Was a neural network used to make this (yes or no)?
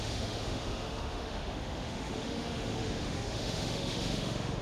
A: yes